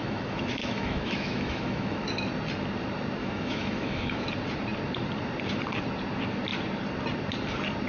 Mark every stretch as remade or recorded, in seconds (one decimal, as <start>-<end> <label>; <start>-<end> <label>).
0.0-2.3 remade; 2.3-3.2 recorded; 3.2-4.3 remade; 4.3-7.9 recorded